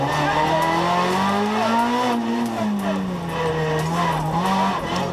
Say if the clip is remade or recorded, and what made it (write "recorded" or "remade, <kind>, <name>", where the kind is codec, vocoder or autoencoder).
recorded